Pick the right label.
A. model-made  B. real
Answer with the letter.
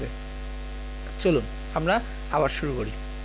B